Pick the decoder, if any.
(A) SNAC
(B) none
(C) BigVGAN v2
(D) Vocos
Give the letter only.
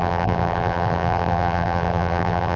C